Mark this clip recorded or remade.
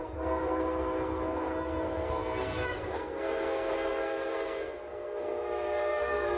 remade